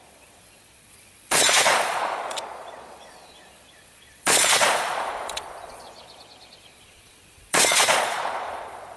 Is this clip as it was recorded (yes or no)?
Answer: no